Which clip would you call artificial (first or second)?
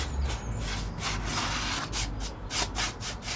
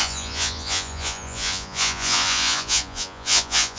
second